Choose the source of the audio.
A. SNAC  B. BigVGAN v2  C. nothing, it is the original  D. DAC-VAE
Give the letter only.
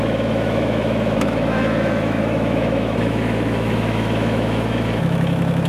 D